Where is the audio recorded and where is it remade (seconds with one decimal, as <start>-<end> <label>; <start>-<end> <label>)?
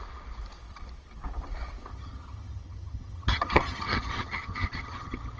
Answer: 0.0-1.9 recorded; 1.9-5.4 remade